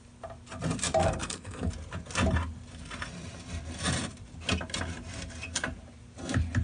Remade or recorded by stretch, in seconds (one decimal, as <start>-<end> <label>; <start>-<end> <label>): 0.0-1.0 recorded; 1.0-1.7 remade; 1.7-6.6 recorded